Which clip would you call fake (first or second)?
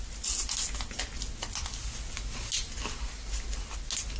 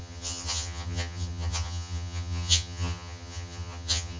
second